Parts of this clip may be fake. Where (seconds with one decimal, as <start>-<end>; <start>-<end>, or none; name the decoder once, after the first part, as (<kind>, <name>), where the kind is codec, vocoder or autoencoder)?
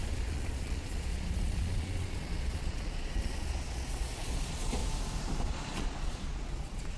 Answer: 0.0-4.8 (vocoder, Vocos); 5.4-7.0